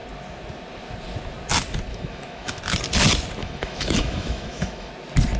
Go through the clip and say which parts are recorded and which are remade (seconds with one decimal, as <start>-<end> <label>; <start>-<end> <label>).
0.0-1.9 recorded; 1.9-2.6 remade; 2.6-3.4 recorded; 3.4-4.9 remade; 4.9-5.4 recorded